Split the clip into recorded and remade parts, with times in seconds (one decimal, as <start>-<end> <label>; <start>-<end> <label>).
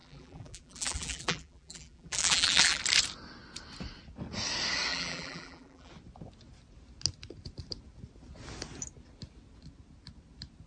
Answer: 0.0-2.8 remade; 2.8-4.9 recorded; 4.9-5.9 remade; 5.9-10.7 recorded